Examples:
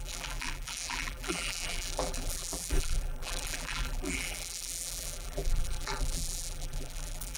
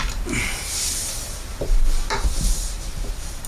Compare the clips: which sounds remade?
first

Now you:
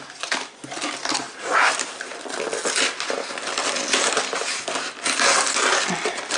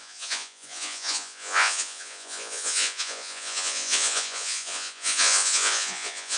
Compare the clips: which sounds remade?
second